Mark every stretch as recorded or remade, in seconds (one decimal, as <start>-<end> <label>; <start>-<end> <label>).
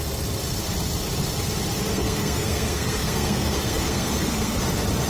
0.0-1.9 recorded; 1.9-4.6 remade; 4.6-5.1 recorded